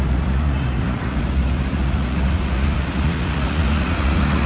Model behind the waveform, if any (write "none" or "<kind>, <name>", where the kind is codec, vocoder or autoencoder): vocoder, Vocos